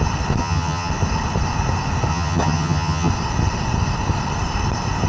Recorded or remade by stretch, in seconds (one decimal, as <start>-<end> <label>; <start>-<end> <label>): 0.0-0.4 recorded; 0.4-0.9 remade; 0.9-2.1 recorded; 2.1-3.1 remade; 3.1-5.1 recorded